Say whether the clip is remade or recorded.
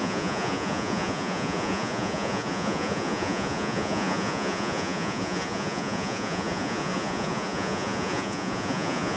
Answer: remade